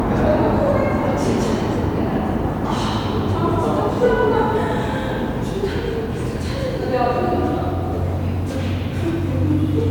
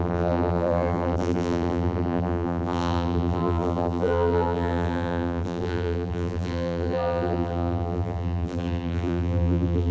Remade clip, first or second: second